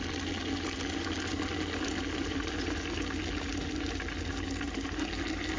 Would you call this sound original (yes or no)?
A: yes